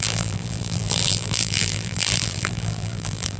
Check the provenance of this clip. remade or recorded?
remade